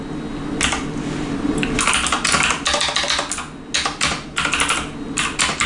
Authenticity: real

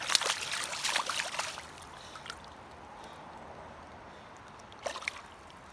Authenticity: real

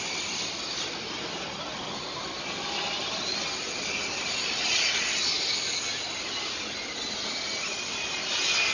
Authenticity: real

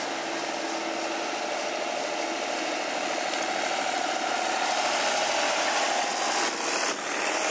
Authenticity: real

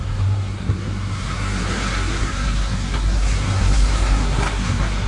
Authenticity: fake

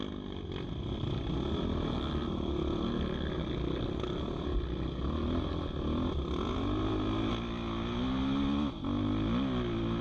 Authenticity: real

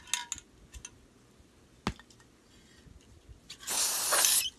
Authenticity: real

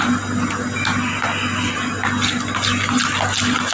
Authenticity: real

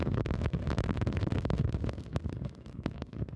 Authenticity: fake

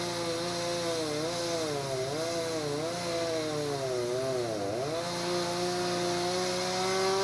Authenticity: real